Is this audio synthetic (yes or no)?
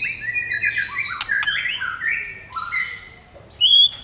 no